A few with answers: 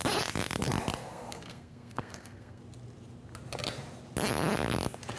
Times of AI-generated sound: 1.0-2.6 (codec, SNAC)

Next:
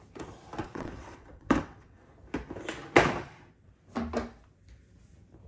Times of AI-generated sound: 0.6-2.0 (vocoder, WaveNeXt)

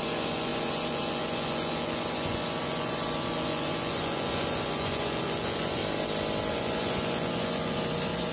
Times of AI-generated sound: 0.0-5.8 (vocoder, Vocos); 6.5-8.3

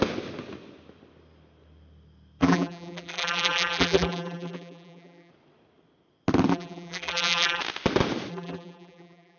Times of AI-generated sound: 2.4-5.3 (vocoder, BigVGAN v2); 6.5-7.6; 8.3-9.4

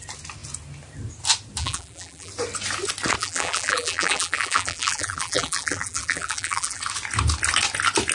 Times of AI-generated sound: 1.6-2.3 (vocoder, BigVGAN v2); 3.2-6.8

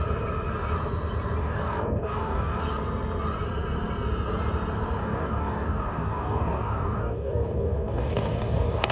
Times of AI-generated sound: 1.4-2.6 (codec, DAC); 5.0-8.9

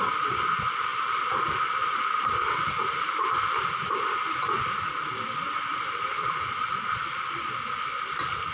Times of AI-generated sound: 0.0-8.5 (vocoder, BigVGAN v2)

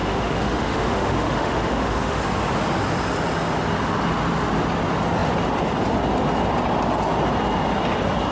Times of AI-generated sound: 0.0-2.2 (autoencoder, DAC-VAE)